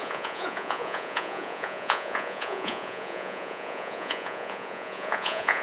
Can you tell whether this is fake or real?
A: fake